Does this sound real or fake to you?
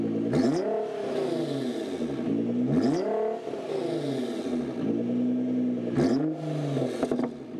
real